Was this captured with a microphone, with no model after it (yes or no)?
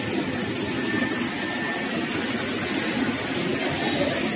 yes